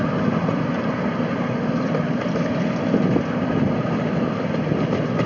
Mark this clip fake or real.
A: real